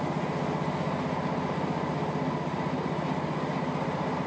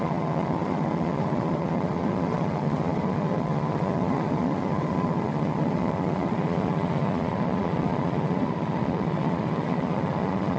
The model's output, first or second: second